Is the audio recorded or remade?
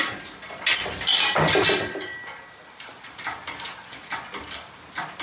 recorded